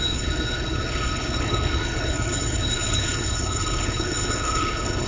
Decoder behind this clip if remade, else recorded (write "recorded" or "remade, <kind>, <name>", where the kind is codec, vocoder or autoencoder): remade, codec, HILCodec